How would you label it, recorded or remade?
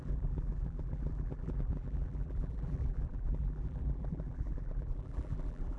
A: remade